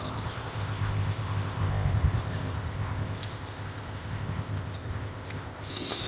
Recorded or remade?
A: remade